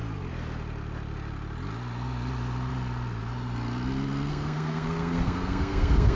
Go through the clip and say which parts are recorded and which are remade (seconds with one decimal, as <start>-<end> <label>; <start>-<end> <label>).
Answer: 0.0-4.3 recorded; 4.3-6.2 remade